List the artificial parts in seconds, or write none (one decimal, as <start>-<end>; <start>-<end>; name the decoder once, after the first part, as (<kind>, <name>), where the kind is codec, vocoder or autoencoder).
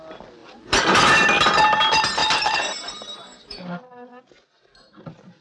2.2-4.3 (vocoder, BigVGAN v2)